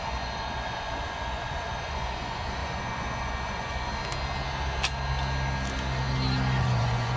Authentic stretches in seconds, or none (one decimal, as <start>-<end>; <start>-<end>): 3.9-6.6

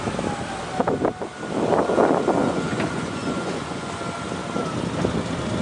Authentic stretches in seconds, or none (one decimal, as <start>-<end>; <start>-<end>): 0.0-2.4; 3.9-5.6